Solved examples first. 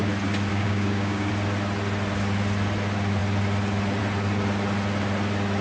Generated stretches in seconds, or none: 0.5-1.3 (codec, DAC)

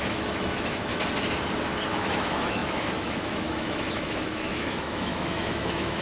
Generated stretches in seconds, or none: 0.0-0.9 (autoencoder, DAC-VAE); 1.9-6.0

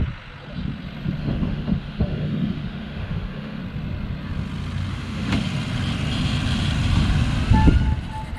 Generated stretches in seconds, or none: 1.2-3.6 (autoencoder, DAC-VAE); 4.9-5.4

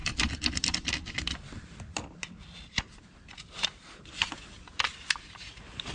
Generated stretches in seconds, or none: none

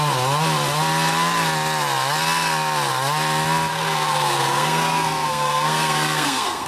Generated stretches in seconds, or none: 3.7-6.7 (codec, SNAC)

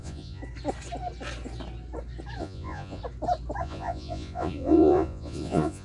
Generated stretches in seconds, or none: 0.0-0.4 (vocoder, Vocos); 2.4-3.0; 3.6-5.8